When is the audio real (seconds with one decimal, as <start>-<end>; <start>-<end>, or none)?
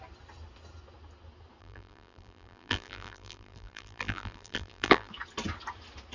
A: 0.0-1.6; 5.1-6.1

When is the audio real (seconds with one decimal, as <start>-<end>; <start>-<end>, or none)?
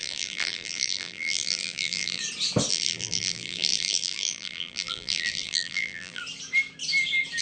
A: 2.2-2.7; 6.2-7.4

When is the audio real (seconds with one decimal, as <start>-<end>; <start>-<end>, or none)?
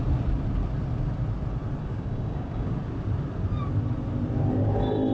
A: 0.0-1.8; 2.7-5.1